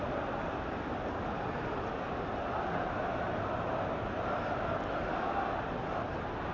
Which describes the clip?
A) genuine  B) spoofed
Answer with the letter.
A